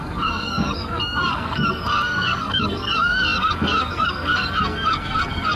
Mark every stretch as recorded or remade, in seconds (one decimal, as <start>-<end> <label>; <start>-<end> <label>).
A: 0.0-5.6 remade